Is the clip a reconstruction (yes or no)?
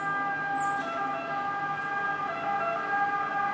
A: no